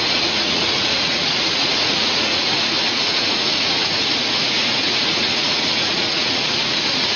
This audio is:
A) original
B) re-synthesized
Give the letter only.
B